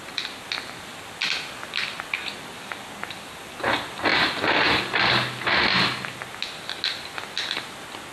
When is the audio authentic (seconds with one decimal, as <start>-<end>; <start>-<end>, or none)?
0.0-8.1